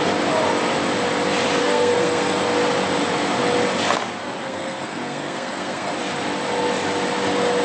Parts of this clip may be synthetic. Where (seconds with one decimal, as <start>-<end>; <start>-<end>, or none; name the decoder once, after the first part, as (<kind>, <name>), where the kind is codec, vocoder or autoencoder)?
1.6-2.4 (codec, SNAC); 4.4-5.9